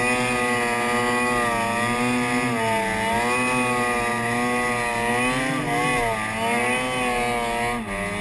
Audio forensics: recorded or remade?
recorded